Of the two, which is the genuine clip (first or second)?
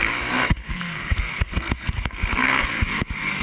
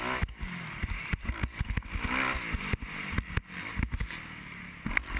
second